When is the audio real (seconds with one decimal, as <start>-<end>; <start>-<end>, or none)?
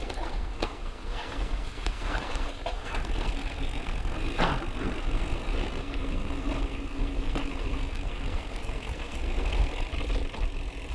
9.9-10.9